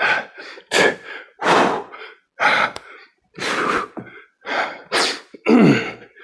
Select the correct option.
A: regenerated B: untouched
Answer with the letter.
B